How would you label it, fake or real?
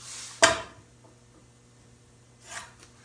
real